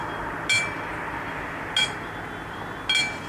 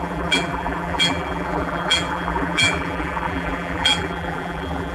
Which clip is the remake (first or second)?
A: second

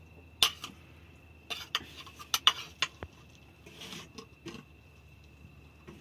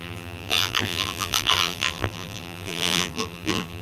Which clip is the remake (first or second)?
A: second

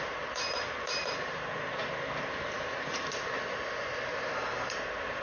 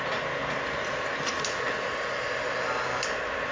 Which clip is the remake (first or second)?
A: first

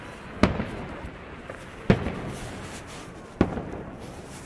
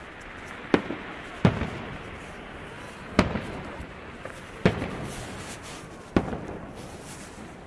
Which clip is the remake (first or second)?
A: second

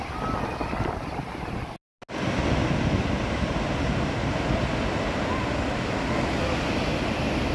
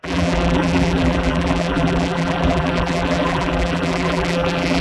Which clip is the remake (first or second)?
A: second